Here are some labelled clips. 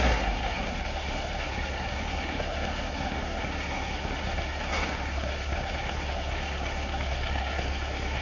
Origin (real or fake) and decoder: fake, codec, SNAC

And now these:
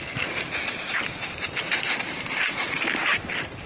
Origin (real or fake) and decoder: fake, vocoder, BigVGAN v2